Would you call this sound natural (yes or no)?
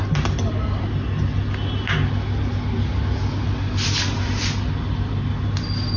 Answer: yes